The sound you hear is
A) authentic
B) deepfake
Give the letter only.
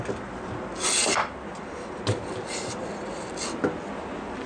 A